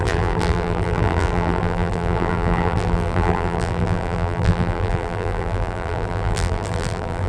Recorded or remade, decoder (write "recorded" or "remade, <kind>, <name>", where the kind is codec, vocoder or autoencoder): remade, vocoder, BigVGAN v2